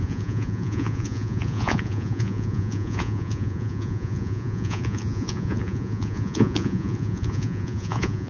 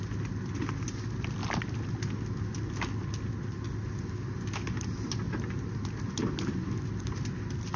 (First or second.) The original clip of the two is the second